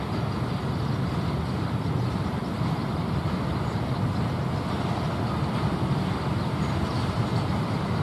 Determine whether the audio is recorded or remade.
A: recorded